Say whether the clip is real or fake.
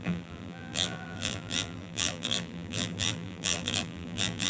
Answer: fake